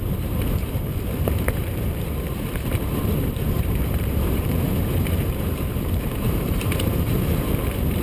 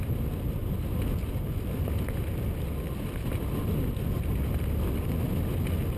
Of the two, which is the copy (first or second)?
first